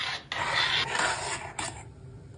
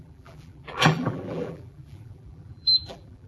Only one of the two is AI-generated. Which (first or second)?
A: second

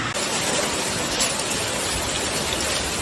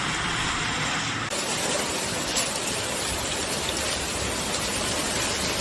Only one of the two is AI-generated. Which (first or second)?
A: second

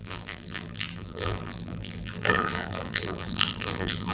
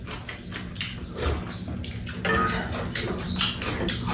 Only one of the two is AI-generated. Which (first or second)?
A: first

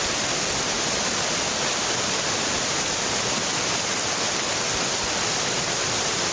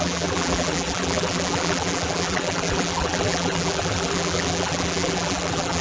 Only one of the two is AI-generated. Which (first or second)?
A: second